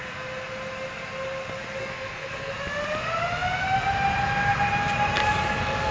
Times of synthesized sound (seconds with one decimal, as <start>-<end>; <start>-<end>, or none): 1.8-2.5